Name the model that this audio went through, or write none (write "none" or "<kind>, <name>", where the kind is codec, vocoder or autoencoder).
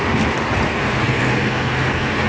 none